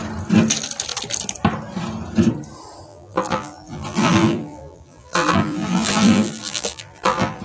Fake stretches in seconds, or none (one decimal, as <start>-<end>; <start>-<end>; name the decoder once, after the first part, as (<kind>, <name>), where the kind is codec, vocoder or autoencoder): 2.9-7.4 (vocoder, BigVGAN v2)